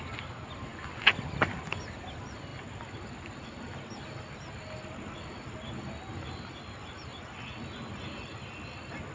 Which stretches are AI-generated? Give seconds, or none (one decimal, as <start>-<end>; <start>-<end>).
none